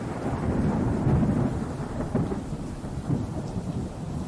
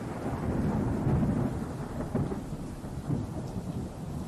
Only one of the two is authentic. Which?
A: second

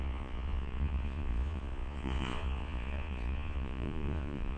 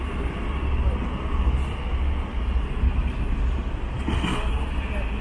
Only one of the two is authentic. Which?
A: second